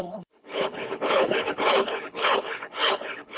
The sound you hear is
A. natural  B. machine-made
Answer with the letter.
B